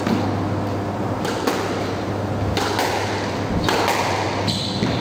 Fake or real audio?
real